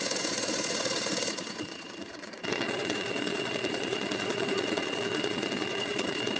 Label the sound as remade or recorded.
remade